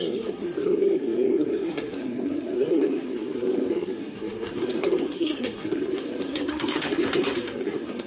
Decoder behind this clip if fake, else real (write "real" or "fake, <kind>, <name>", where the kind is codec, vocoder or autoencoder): fake, codec, SNAC